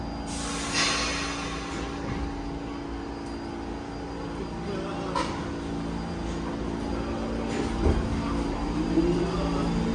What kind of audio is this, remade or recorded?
recorded